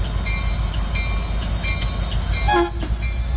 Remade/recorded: recorded